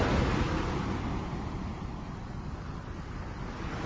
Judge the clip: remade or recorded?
recorded